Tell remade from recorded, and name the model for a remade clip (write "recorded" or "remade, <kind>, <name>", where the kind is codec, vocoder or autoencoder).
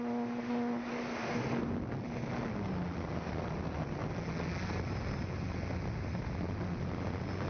recorded